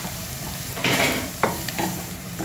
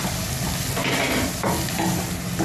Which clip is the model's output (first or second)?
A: first